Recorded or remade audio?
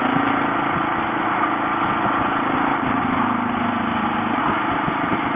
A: recorded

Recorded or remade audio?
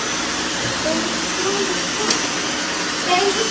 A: recorded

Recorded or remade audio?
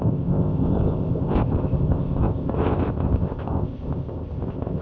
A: remade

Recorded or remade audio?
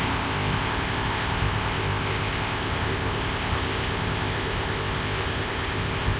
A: remade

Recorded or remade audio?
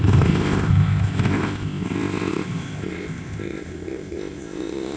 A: remade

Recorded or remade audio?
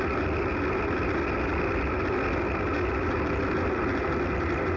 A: recorded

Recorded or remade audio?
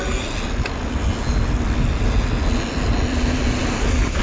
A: recorded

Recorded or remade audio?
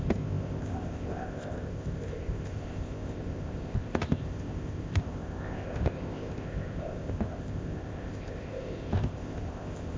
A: remade